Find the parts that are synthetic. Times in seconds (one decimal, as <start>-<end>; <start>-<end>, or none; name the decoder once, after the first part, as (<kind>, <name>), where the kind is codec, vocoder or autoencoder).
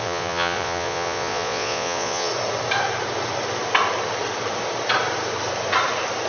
0.0-2.3 (vocoder, Vocos)